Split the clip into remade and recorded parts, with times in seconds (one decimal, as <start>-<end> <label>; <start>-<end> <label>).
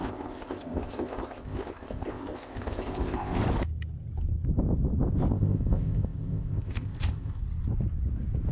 0.0-3.4 remade; 3.4-5.3 recorded; 5.3-7.4 remade; 7.4-8.5 recorded